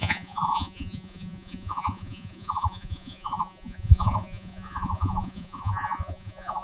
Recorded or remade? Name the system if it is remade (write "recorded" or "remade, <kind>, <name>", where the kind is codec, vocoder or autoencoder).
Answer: remade, vocoder, Vocos